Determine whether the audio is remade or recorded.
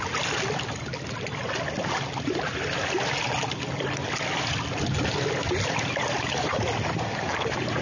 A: recorded